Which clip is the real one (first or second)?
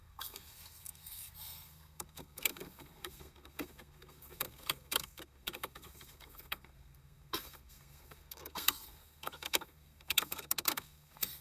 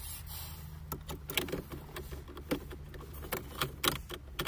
second